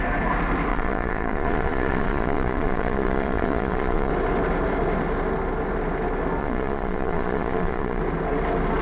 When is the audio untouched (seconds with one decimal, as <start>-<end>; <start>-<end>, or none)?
0.0-0.7; 4.1-6.4; 8.0-8.8